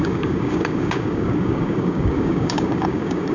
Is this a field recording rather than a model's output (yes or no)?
no